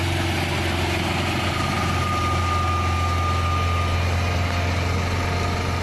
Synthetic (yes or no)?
no